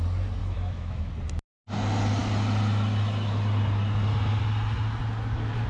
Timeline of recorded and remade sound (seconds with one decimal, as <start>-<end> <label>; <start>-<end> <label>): 0.0-0.4 recorded; 0.4-1.1 remade; 1.1-5.7 recorded